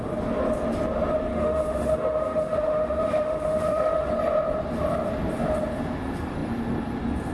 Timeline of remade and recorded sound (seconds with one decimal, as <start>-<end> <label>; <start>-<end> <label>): 0.0-1.3 recorded; 1.3-4.1 remade; 4.1-7.3 recorded